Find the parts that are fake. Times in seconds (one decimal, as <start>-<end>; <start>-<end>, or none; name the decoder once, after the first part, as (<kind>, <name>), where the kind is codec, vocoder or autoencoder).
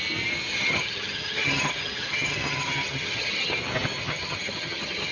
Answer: 0.5-3.6 (vocoder, HiFi-GAN); 4.0-5.1